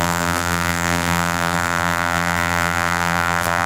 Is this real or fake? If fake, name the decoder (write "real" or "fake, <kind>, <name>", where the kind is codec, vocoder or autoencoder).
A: fake, vocoder, BigVGAN v2